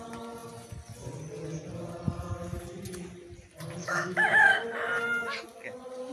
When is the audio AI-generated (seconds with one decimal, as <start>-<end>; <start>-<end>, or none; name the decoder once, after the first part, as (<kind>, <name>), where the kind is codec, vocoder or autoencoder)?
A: 3.8-4.5 (autoencoder, DAC-VAE)